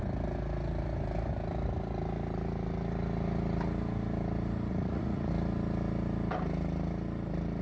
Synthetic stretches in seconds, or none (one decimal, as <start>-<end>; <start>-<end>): 4.7-5.3